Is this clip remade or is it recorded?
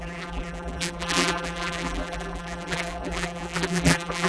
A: remade